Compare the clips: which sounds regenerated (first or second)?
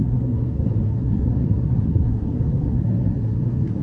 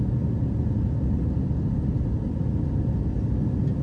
first